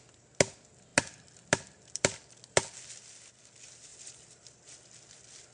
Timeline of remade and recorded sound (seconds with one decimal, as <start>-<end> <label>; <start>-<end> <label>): 0.0-5.5 recorded